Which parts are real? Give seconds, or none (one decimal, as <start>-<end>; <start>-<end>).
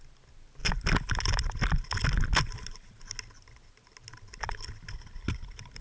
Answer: 0.0-5.8